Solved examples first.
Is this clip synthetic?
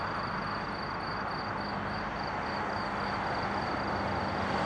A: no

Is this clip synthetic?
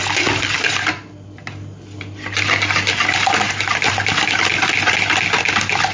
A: no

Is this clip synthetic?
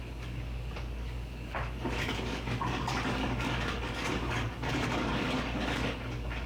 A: yes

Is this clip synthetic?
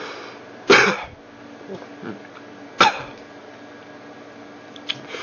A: no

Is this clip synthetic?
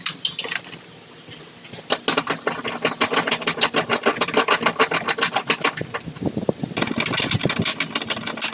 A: no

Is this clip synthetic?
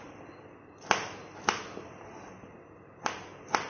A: no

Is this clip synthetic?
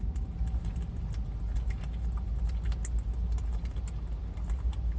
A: no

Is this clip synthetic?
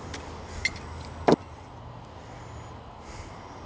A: no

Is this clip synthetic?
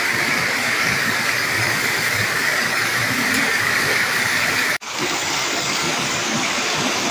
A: yes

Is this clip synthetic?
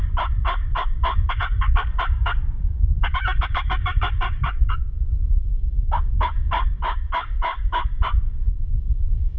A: yes